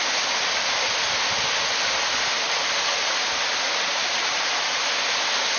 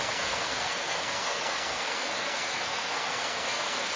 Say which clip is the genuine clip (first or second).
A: first